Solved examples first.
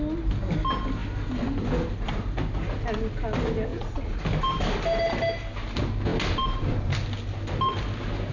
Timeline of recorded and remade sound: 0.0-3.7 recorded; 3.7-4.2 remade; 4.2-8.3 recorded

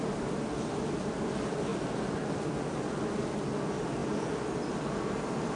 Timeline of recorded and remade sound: 0.0-5.6 recorded

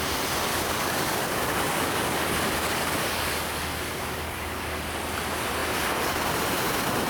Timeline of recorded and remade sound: 0.0-0.5 recorded; 0.5-4.8 remade; 4.8-7.1 recorded

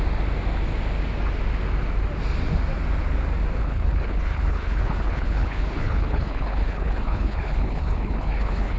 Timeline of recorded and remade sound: 0.0-3.6 recorded; 3.6-8.8 remade